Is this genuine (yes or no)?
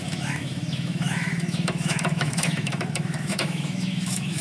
no